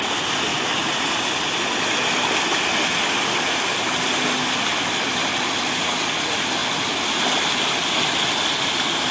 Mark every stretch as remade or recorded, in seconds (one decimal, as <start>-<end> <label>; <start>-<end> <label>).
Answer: 0.0-9.1 recorded